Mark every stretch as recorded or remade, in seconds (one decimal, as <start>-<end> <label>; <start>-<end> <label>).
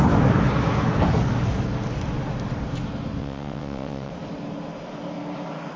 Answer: 0.0-3.2 recorded; 3.2-4.1 remade; 4.1-5.8 recorded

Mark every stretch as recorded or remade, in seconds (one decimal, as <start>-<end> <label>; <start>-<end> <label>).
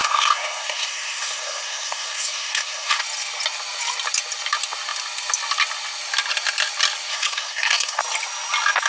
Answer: 0.0-3.0 remade; 3.0-7.1 recorded; 7.1-8.0 remade; 8.0-8.9 recorded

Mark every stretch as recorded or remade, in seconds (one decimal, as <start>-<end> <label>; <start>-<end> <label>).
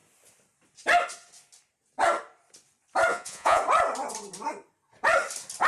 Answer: 0.0-3.1 recorded; 3.1-3.6 remade; 3.6-5.7 recorded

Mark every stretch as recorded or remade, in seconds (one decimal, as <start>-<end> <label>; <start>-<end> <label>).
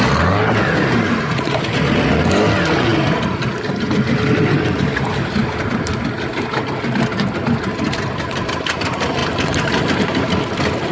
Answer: 0.0-10.9 recorded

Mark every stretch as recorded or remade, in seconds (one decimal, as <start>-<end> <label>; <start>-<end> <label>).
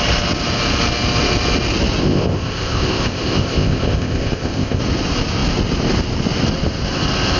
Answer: 0.0-2.0 recorded; 2.0-4.8 remade; 4.8-7.4 recorded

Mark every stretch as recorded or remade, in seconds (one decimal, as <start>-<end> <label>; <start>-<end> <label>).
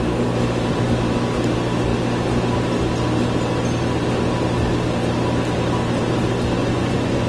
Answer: 0.0-6.6 recorded; 6.6-7.3 remade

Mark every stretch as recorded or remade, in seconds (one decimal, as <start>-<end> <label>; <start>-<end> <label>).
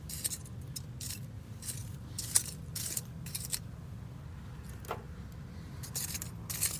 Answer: 0.0-6.8 recorded